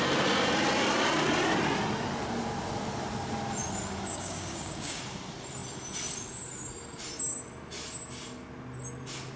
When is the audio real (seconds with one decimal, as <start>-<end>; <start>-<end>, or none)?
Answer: 0.0-4.1; 5.0-9.4